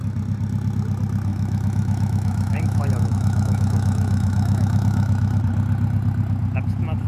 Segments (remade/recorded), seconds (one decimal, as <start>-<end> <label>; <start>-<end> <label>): 0.0-1.3 recorded; 1.3-5.4 remade; 5.4-7.1 recorded